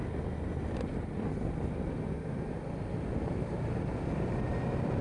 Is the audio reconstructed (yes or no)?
no